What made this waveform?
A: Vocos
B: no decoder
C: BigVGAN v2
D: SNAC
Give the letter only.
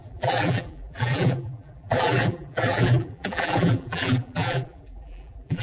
C